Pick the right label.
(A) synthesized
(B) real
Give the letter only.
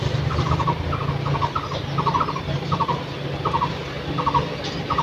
B